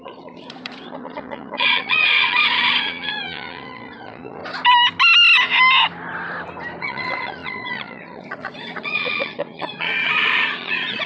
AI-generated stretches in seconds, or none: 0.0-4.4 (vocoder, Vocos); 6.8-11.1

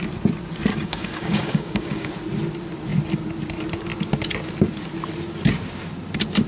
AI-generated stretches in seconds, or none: 0.7-2.1 (codec, DAC)

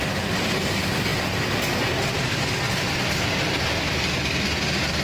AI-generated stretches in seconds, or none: none

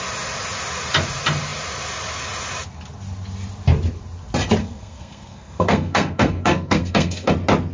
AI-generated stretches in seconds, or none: 4.6-7.3 (codec, SNAC)

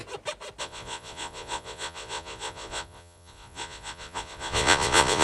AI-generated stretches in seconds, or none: 0.6-5.2 (vocoder, Vocos)

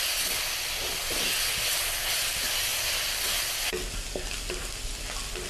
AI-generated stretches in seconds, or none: none

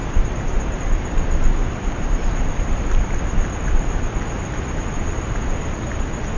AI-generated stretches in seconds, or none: 0.0-0.8 (vocoder, BigVGAN v2); 1.6-3.9

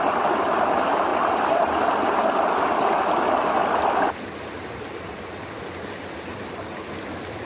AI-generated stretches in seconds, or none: none